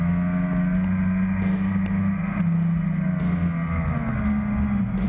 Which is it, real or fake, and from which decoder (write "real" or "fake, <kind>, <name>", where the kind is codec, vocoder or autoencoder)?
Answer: real